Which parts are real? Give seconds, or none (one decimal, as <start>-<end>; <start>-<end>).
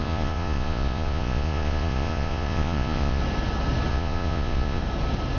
3.2-3.9; 4.8-5.4